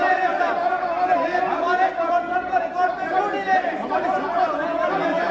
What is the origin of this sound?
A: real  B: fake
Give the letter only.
A